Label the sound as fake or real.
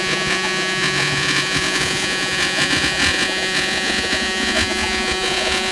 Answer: fake